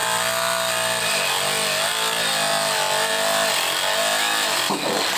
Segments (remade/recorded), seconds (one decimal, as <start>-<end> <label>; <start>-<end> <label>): 0.0-5.2 recorded